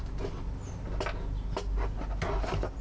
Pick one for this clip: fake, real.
real